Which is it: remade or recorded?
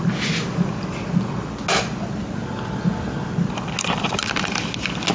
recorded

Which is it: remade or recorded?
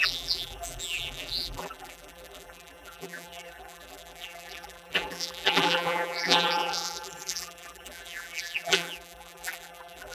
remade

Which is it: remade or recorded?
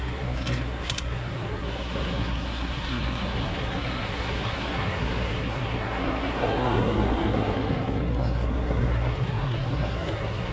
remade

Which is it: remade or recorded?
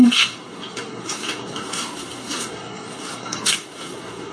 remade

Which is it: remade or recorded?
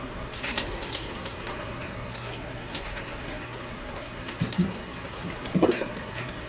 remade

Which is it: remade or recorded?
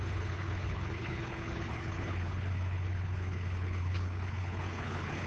remade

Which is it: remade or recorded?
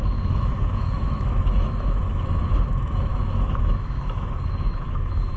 remade